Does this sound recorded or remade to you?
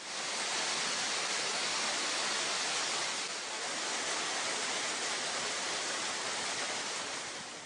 recorded